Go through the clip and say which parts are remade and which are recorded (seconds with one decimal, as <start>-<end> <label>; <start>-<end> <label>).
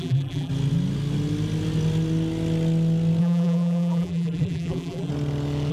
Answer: 0.0-0.5 remade; 0.5-3.2 recorded; 3.2-5.1 remade; 5.1-5.7 recorded